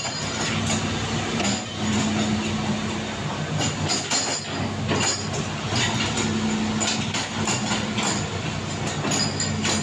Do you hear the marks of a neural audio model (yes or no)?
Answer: no